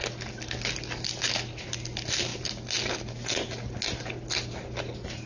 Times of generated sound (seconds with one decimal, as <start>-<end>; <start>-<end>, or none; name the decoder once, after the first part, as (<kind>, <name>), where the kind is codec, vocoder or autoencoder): none